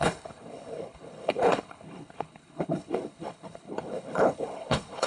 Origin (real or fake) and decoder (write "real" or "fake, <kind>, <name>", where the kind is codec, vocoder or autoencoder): fake, codec, HILCodec